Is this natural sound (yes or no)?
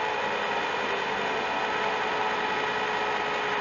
yes